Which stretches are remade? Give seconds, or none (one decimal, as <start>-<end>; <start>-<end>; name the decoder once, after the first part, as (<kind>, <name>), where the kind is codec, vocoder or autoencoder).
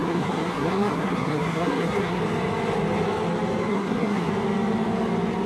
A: 0.0-2.2 (codec, SNAC); 3.7-4.3